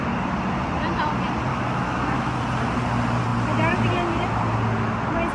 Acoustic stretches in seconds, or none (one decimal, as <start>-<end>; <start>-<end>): 0.0-1.5; 2.3-5.3